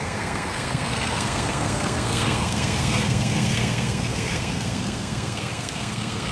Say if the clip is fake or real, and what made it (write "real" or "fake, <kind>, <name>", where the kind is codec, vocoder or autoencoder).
fake, codec, SNAC